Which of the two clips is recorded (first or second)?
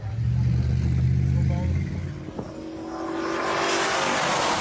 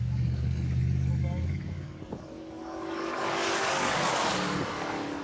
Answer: first